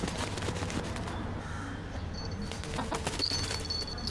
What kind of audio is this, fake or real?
real